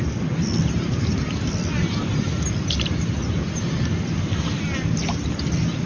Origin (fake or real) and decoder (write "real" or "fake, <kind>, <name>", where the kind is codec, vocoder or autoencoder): real